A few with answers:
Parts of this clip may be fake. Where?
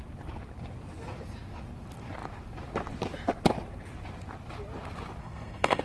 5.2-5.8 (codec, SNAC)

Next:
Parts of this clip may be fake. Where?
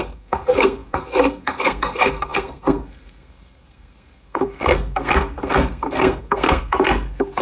0.0-7.4 (codec, SNAC)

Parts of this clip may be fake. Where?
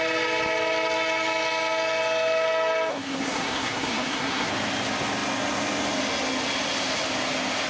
2.9-4.5 (codec, SNAC)